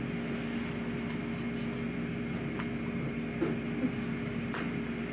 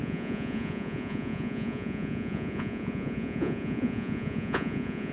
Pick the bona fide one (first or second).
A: first